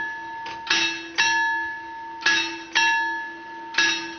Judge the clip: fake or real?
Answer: real